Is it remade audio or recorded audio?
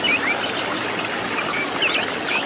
recorded